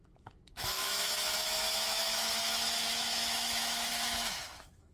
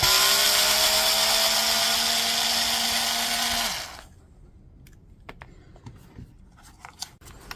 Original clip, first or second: second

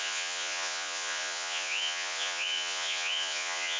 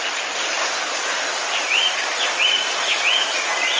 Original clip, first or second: second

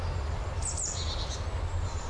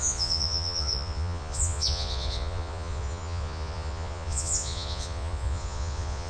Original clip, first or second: first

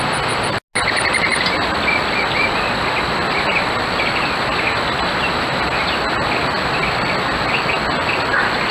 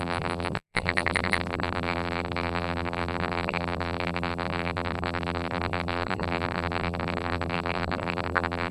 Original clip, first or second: first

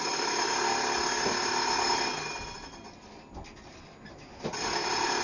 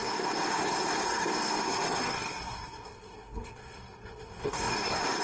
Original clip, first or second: first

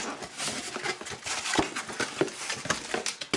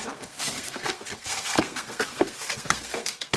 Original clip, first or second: first